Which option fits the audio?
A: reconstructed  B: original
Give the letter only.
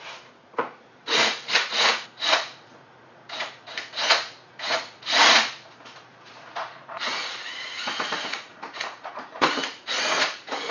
A